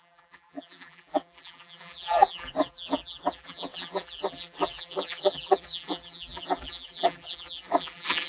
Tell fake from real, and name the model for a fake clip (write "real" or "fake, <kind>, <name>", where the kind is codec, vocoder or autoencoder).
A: fake, vocoder, BigVGAN v2